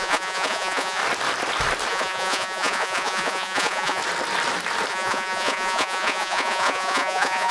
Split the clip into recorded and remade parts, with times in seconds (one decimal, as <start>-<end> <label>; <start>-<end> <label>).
0.0-1.0 remade; 1.0-1.9 recorded; 1.9-4.0 remade; 4.0-4.9 recorded; 4.9-7.5 remade